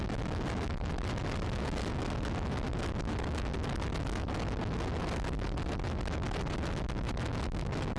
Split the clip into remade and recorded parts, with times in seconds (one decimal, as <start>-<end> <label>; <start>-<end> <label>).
0.0-8.0 recorded